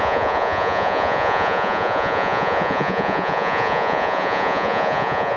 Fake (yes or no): yes